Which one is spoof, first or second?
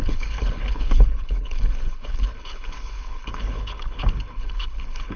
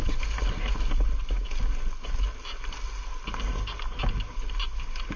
first